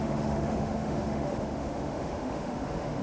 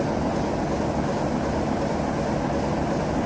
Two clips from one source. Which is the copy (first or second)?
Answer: first